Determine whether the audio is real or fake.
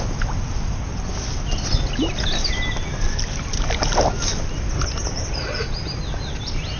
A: real